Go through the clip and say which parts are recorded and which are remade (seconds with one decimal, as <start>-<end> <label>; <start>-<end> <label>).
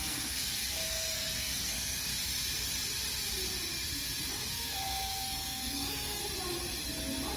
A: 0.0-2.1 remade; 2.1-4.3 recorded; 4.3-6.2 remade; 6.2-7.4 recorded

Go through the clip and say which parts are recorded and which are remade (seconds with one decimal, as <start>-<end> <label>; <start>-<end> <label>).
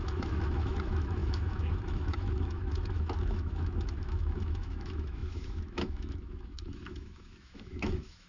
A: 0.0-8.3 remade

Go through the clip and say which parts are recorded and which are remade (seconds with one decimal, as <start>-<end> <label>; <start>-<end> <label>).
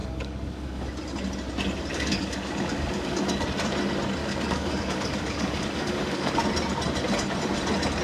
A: 0.0-0.9 remade; 0.9-1.9 recorded; 1.9-3.2 remade; 3.2-4.2 recorded; 4.2-6.4 remade; 6.4-8.0 recorded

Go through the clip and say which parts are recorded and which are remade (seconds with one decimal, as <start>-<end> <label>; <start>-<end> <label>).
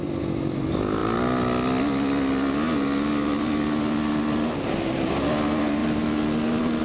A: 0.0-6.8 recorded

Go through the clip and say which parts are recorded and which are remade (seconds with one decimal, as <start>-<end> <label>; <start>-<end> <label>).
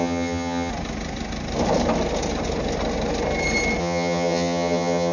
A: 0.0-0.7 remade; 0.7-3.8 recorded; 3.8-5.1 remade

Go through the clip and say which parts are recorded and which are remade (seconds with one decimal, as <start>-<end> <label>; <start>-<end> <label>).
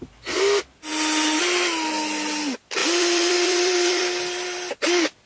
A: 0.0-2.8 recorded; 2.8-4.7 remade; 4.7-5.3 recorded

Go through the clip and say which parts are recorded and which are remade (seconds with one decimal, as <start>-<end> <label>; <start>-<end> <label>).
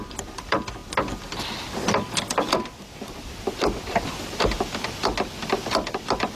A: 0.0-6.4 recorded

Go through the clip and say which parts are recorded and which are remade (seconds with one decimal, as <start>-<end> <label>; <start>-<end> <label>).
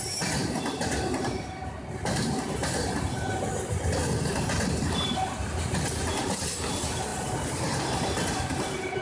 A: 0.0-2.6 remade; 2.6-5.9 recorded; 5.9-9.0 remade